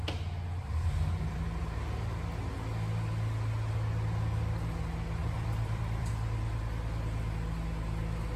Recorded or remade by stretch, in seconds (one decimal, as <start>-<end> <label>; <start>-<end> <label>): 0.0-5.2 recorded; 5.2-6.1 remade; 6.1-8.4 recorded